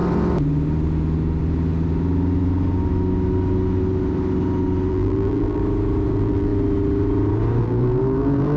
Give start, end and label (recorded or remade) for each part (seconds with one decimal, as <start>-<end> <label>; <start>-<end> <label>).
0.0-4.9 recorded; 4.9-5.6 remade; 5.6-6.1 recorded; 6.1-6.5 remade; 6.5-7.6 recorded; 7.6-8.6 remade